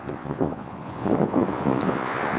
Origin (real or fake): fake